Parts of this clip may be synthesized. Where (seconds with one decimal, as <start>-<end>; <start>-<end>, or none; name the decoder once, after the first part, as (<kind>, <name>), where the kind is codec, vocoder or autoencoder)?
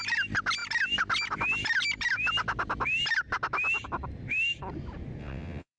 5.2-5.8 (vocoder, WaveNeXt)